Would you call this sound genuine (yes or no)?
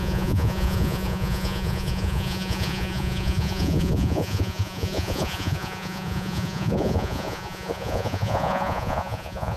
no